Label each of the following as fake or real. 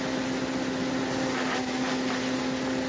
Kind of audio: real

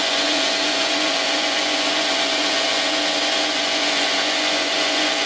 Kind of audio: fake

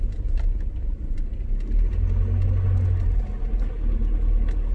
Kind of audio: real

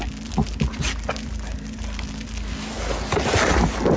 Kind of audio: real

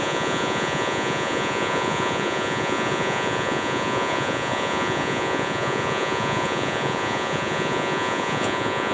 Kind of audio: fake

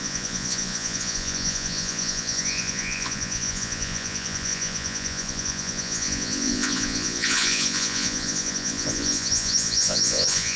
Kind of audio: fake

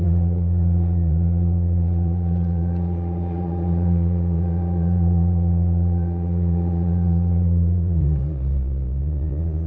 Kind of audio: fake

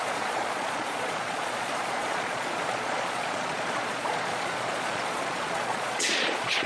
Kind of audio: fake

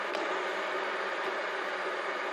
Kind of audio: real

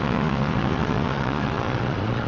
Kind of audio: fake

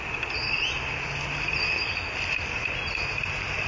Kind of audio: real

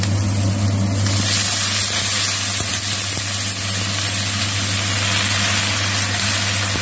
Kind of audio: real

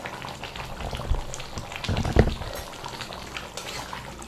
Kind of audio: real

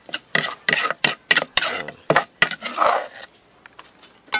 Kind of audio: real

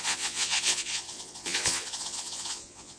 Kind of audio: fake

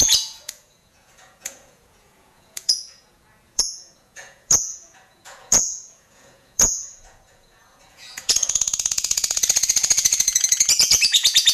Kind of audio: fake